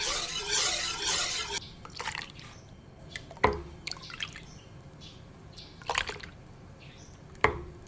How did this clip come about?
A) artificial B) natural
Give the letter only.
A